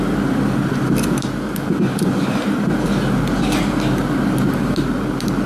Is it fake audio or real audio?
real